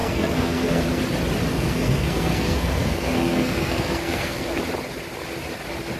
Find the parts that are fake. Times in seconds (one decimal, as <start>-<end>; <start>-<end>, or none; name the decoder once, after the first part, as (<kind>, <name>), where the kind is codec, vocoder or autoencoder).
0.0-1.0 (codec, SNAC); 1.5-4.6